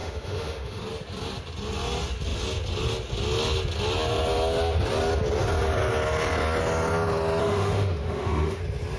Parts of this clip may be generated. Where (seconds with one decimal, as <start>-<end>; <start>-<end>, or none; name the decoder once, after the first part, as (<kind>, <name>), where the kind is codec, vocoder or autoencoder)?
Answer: 0.0-0.8 (autoencoder, DAC-VAE); 7.4-8.6

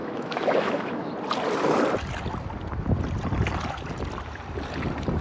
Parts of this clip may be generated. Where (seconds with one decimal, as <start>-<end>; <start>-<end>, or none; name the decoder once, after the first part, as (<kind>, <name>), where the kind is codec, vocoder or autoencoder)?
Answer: 0.0-1.1 (autoencoder, DAC-VAE)

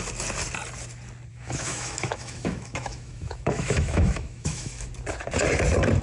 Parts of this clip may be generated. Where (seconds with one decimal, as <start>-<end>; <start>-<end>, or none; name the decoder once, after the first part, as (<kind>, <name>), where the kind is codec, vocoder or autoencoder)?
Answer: 1.3-4.9 (autoencoder, DAC-VAE)

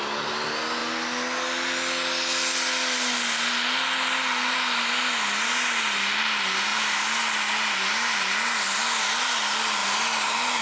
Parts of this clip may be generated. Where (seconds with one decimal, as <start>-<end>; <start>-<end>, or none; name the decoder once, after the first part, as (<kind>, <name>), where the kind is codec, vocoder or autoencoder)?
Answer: none

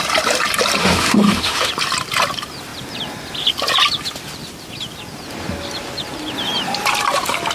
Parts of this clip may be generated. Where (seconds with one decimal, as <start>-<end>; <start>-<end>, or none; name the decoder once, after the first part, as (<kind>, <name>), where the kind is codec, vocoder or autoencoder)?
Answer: 0.8-1.7 (autoencoder, DAC-VAE)

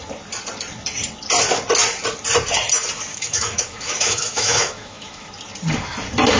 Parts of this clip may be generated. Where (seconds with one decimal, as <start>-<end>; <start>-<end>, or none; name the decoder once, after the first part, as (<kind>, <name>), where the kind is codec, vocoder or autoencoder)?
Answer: 3.1-5.3 (autoencoder, DAC-VAE)

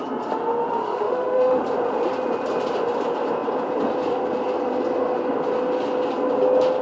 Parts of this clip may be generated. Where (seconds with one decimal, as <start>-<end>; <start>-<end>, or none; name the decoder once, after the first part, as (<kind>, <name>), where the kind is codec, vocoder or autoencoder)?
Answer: 0.8-1.6 (autoencoder, DAC-VAE)